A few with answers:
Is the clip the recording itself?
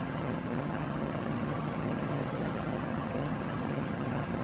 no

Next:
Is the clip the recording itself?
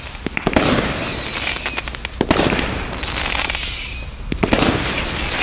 yes